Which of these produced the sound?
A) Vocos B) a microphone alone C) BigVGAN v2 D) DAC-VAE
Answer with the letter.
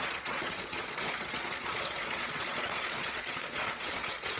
A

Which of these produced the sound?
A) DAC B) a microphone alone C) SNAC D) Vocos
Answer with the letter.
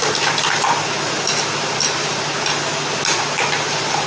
B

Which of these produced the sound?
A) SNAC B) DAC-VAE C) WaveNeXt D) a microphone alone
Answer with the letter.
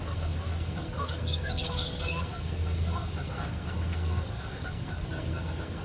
A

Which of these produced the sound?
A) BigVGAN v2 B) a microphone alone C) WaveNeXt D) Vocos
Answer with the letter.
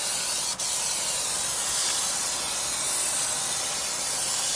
B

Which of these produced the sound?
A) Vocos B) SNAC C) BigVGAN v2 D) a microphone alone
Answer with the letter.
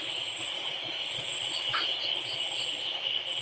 D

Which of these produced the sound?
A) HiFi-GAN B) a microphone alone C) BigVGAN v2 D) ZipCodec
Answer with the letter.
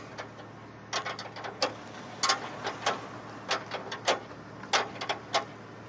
B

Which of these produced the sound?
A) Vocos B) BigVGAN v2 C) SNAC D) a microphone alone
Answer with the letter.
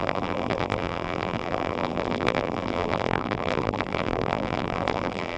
B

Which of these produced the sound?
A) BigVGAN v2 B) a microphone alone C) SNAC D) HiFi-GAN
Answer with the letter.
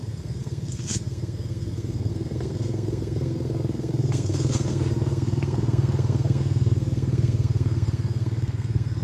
C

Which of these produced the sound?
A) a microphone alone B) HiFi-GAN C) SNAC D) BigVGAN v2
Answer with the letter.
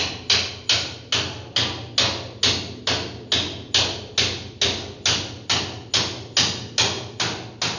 A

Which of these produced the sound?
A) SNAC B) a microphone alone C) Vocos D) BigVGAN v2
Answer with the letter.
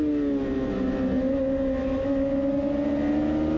B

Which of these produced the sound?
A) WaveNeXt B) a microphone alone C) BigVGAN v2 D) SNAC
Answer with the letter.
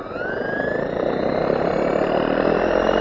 B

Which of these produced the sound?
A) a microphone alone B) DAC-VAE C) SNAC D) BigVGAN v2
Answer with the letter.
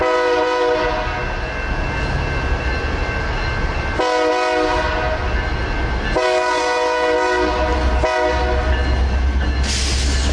A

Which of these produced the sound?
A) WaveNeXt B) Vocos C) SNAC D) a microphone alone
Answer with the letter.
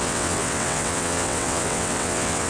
A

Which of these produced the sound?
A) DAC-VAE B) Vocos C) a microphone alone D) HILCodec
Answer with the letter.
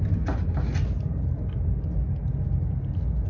C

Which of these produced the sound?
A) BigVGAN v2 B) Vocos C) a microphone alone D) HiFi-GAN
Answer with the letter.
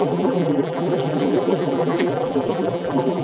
A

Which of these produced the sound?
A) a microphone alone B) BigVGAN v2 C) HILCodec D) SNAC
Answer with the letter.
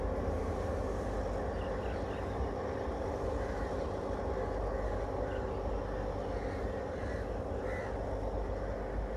A